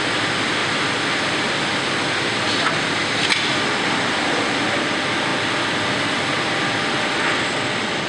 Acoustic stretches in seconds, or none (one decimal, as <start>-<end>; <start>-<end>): 0.0-0.6; 1.8-8.1